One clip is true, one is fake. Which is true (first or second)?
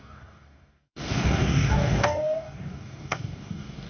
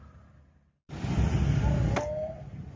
second